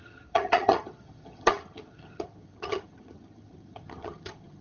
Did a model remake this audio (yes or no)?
yes